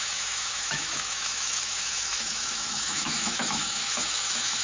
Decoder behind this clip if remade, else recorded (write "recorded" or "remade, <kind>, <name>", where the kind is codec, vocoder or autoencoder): remade, autoencoder, DAC-VAE